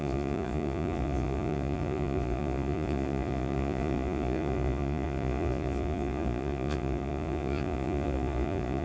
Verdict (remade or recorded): remade